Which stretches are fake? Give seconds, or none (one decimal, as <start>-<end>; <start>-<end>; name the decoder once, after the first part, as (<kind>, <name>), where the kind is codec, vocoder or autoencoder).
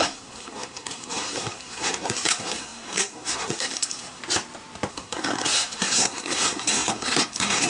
0.0-4.2 (codec, SNAC); 4.9-7.7